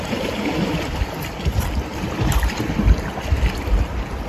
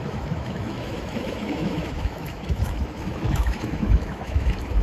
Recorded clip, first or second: first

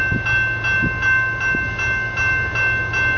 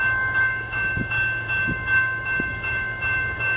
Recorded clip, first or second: first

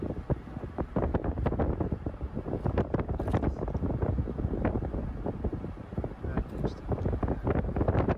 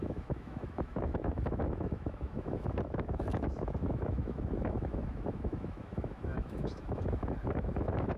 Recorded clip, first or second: first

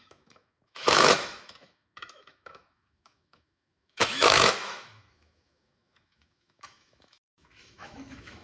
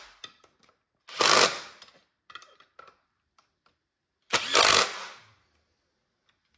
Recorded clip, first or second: second